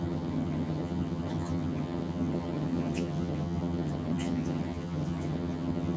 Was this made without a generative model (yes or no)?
no